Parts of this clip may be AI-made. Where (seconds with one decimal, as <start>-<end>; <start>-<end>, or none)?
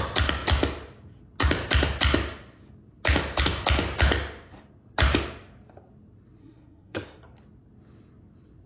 6.4-7.2